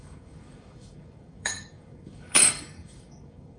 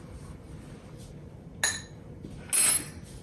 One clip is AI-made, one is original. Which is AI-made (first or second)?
first